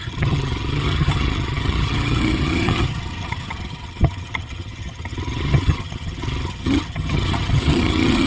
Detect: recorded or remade remade